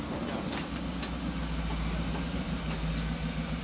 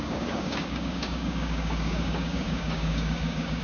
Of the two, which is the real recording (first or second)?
first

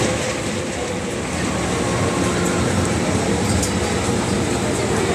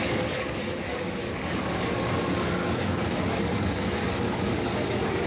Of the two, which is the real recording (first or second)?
first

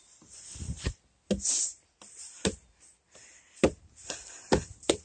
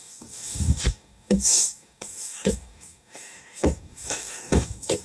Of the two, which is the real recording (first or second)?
first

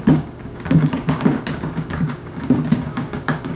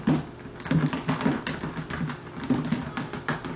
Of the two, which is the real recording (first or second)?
second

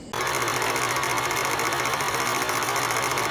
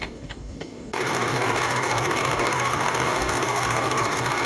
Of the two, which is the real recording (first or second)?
first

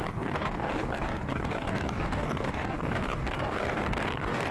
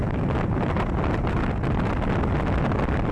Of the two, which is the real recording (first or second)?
second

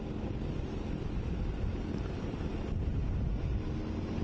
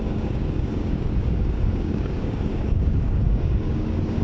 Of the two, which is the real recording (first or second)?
first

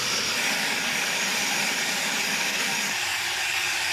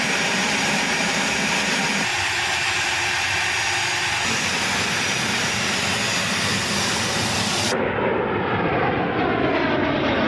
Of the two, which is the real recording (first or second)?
second